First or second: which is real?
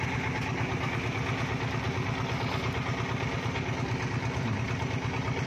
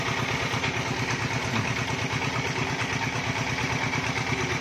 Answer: first